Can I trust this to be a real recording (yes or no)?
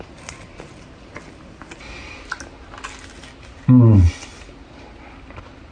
yes